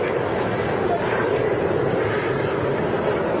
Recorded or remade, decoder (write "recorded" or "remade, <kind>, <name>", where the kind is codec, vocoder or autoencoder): recorded